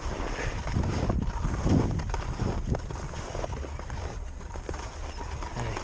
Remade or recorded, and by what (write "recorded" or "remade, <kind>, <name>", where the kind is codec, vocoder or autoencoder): recorded